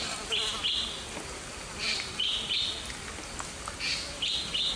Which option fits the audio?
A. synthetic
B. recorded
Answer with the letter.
B